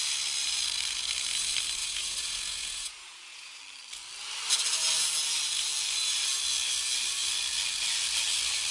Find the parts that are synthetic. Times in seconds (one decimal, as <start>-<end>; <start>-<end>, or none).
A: 1.8-3.6